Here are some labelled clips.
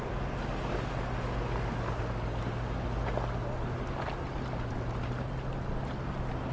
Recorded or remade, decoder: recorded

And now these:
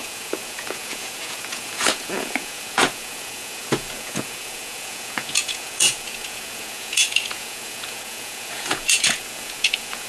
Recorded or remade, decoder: remade, vocoder, Vocos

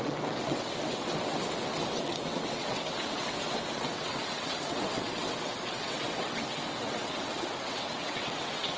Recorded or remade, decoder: remade, vocoder, WaveNeXt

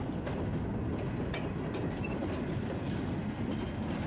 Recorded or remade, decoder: recorded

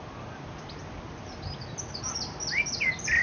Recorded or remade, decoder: recorded